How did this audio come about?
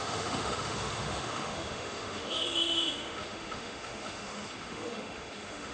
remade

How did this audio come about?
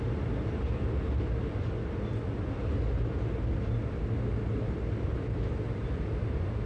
recorded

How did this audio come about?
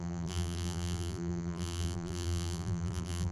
remade